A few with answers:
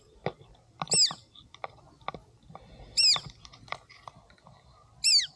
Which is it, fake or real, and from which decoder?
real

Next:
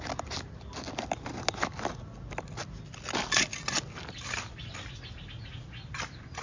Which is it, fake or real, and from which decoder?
real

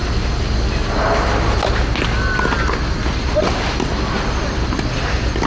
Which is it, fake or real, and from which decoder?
real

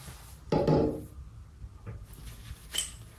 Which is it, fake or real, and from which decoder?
real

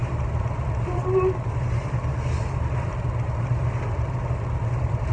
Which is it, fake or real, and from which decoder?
fake, vocoder, BigVGAN v2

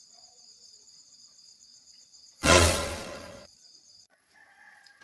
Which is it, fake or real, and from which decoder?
fake, vocoder, Vocos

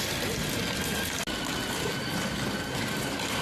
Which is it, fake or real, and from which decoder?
real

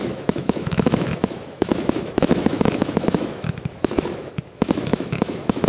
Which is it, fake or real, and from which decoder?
fake, autoencoder, DAC-VAE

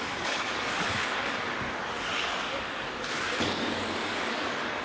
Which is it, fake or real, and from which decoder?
fake, codec, DAC